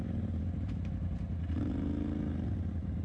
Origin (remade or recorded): recorded